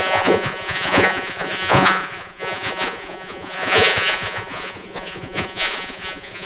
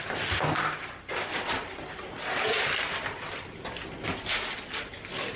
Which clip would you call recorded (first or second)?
second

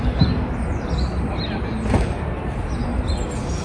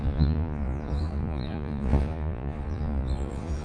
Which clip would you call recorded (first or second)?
first